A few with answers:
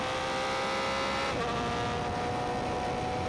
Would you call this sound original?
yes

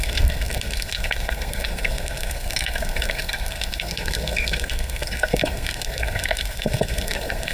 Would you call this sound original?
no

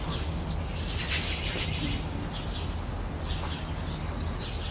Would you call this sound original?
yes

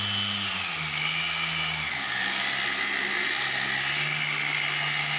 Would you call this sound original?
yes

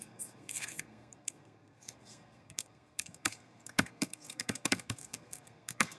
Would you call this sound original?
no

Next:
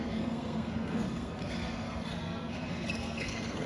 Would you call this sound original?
no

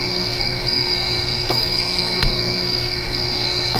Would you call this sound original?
no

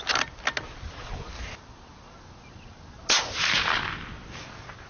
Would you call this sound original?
yes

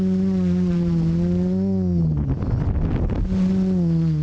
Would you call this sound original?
yes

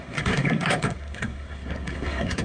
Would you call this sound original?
no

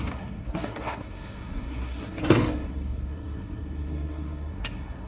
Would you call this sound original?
no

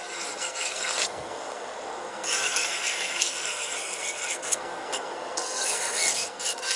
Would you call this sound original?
no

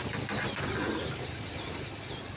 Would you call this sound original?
yes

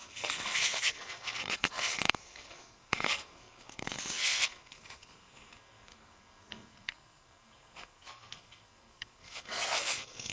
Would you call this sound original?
no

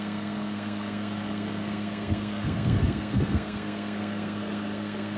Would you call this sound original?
no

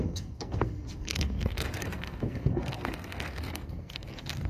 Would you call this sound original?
no